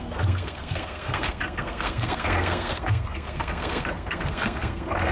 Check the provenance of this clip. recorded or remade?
remade